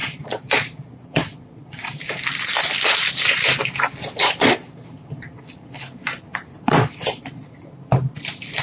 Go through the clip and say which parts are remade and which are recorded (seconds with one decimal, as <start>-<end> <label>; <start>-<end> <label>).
0.0-2.0 remade; 2.0-4.0 recorded; 4.0-5.8 remade; 5.8-6.5 recorded; 6.5-7.7 remade; 7.7-8.6 recorded